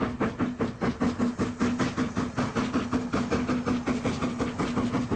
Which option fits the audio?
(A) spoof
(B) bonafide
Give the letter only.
B